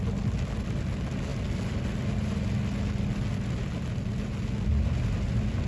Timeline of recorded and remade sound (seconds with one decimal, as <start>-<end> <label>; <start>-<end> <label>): 0.0-5.7 recorded